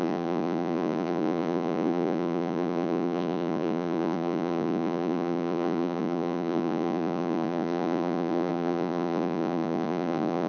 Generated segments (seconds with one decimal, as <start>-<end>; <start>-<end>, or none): 0.0-10.5